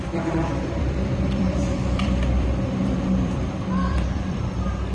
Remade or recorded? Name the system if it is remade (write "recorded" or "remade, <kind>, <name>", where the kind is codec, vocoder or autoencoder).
remade, vocoder, BigVGAN v2